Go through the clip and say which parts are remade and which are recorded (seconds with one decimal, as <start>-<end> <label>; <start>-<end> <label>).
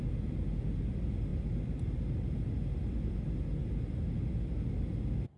0.0-5.4 recorded